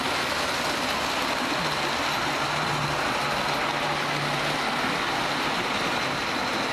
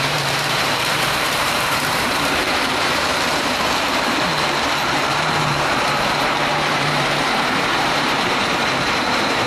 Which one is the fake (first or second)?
second